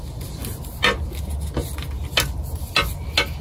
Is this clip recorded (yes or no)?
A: yes